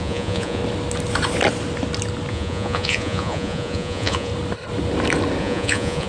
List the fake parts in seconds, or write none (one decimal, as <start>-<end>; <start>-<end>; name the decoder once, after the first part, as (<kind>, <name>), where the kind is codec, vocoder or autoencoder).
0.0-0.6 (vocoder, Vocos); 2.3-4.3; 5.4-6.1